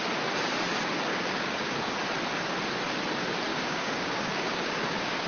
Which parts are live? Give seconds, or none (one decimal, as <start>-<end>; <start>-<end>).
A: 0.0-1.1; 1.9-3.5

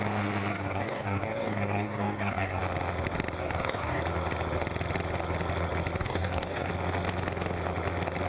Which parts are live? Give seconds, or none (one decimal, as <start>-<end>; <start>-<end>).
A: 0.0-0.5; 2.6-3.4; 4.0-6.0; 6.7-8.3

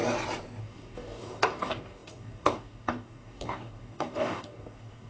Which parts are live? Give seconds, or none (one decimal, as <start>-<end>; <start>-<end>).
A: 0.0-0.6

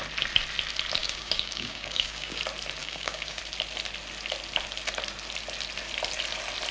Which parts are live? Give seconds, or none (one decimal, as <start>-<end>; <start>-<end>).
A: 0.0-1.0; 2.4-2.8; 3.4-6.7

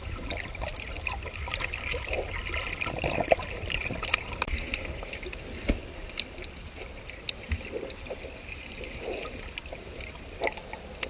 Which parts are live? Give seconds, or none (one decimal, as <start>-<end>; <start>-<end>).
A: 0.0-11.1